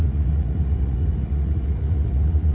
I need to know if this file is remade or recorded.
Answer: remade